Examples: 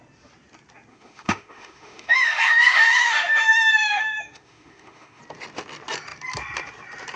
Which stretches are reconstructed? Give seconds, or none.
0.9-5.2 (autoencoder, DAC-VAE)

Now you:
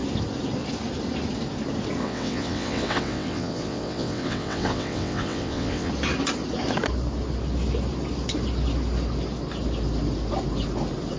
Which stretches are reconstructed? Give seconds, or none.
2.0-5.9 (vocoder, WaveNeXt)